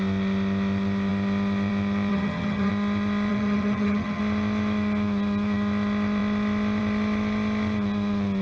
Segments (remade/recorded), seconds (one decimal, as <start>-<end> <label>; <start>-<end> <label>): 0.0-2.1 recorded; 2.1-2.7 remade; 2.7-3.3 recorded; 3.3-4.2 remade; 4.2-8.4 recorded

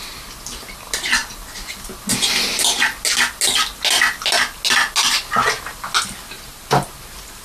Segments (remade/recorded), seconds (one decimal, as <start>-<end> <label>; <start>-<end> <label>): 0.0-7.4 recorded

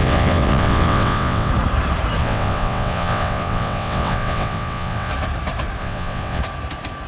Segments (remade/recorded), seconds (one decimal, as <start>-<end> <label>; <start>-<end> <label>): 0.0-1.5 remade; 1.5-2.2 recorded; 2.2-5.1 remade; 5.1-5.8 recorded; 5.8-6.4 remade; 6.4-7.1 recorded

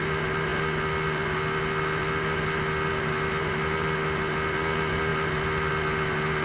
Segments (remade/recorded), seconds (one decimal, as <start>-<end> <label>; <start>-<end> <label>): 0.0-6.4 recorded

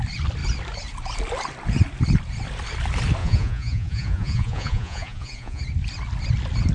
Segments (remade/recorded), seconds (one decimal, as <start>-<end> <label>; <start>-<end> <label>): 0.0-3.2 recorded; 3.2-5.6 remade; 5.6-6.7 recorded

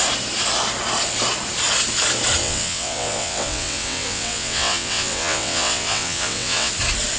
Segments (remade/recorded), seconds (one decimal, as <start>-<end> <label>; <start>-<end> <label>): 0.0-2.4 recorded; 2.4-6.7 remade; 6.7-7.2 recorded

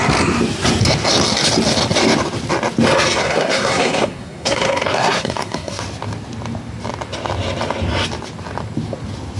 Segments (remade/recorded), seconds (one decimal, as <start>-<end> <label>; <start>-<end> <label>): 0.0-3.2 recorded; 3.2-5.8 remade; 5.8-9.4 recorded